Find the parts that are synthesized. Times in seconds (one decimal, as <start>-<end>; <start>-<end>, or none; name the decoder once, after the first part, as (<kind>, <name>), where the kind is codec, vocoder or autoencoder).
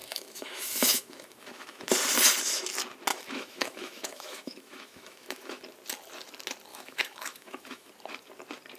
0.0-1.9 (autoencoder, DAC-VAE); 3.1-5.6; 6.7-7.9